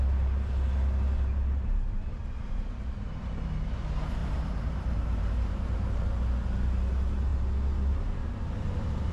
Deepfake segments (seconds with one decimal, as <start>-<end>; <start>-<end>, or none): 4.2-6.0